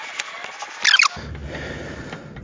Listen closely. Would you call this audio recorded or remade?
recorded